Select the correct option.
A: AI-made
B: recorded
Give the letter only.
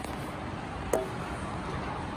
B